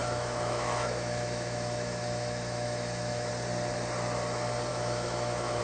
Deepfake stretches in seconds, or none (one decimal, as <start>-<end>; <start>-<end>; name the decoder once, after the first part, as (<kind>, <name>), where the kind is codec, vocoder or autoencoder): 0.0-3.3 (autoencoder, DAC-VAE); 4.7-5.6